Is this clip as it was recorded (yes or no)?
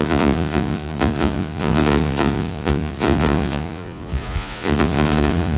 no